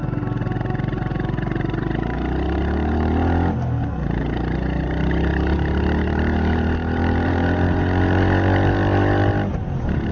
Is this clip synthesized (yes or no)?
no